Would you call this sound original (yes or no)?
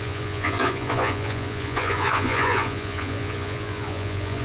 no